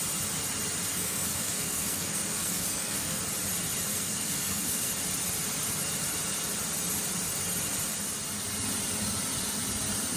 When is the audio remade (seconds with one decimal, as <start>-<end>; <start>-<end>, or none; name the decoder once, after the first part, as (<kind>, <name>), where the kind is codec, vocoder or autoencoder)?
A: 0.9-3.2 (codec, SNAC); 3.9-4.9